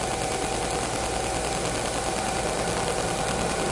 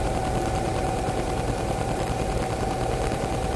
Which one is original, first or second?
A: first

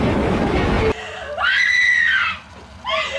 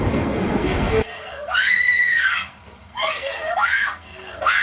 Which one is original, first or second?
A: first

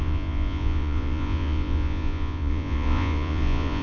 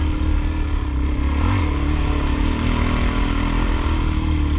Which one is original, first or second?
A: second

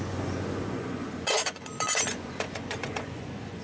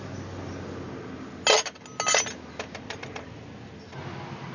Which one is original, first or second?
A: second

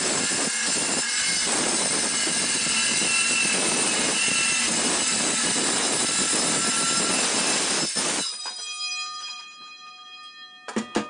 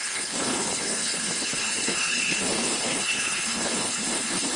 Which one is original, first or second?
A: first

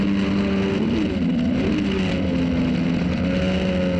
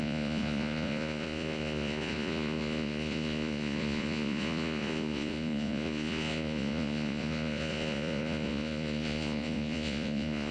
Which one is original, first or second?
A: first